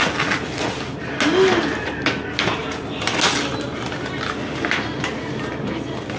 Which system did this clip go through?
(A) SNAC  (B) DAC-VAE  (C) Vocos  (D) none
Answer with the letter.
D